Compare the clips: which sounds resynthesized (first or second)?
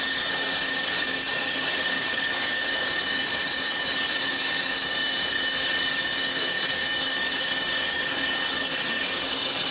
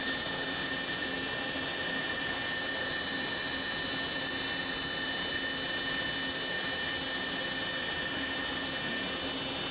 first